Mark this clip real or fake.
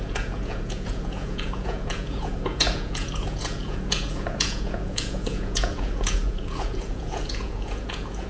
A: fake